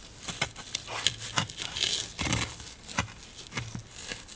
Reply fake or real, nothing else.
real